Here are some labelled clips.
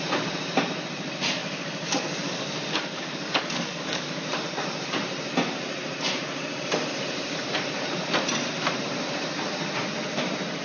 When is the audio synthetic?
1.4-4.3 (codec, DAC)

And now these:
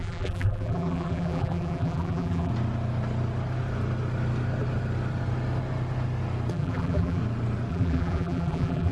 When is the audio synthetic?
0.0-2.5 (vocoder, BigVGAN v2); 6.5-7.2; 7.7-8.9

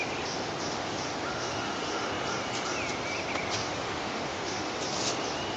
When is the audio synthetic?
1.3-2.1 (autoencoder, DAC-VAE); 3.6-4.8

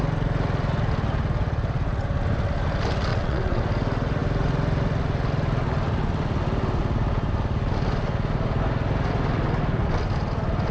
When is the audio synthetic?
3.1-3.6 (vocoder, WaveNeXt)

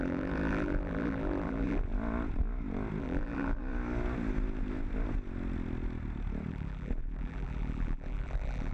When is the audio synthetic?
0.0-1.9 (vocoder, BigVGAN v2); 3.0-3.6; 6.5-8.7

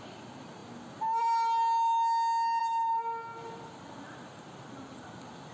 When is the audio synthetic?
3.3-5.0 (vocoder, BigVGAN v2)

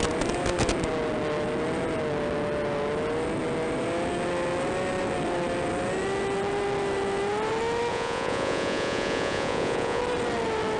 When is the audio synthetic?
7.9-10.0 (vocoder, Vocos)